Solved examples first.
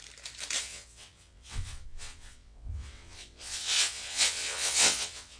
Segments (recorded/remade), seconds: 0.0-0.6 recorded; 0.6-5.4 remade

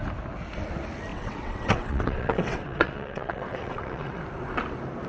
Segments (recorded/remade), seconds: 0.0-1.1 recorded; 1.1-4.2 remade; 4.2-5.1 recorded

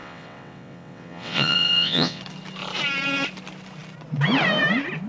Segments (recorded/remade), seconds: 0.0-2.2 remade; 2.2-5.1 recorded

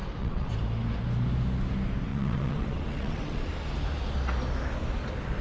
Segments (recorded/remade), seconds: 0.0-0.5 remade; 0.5-2.1 recorded; 2.1-3.5 remade; 3.5-5.4 recorded

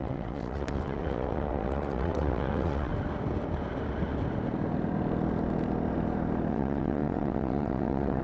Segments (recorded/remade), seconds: 0.0-2.9 remade; 2.9-6.5 recorded; 6.5-8.2 remade

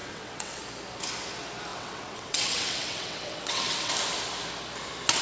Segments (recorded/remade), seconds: 0.0-0.6 remade; 0.6-1.7 recorded; 1.7-3.9 remade; 3.9-5.2 recorded